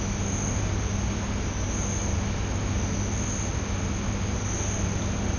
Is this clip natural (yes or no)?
yes